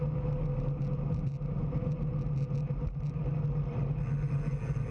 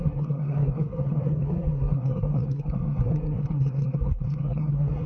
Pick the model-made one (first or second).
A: second